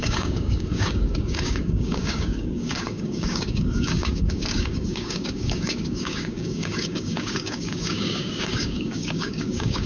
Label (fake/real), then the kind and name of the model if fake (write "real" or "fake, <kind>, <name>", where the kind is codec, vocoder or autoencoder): fake, codec, DAC